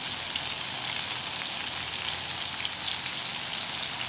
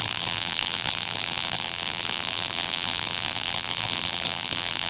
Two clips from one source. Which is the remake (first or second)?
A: second